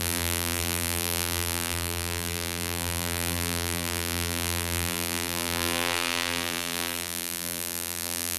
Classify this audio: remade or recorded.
remade